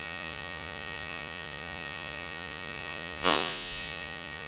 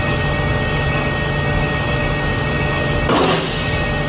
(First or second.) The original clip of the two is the second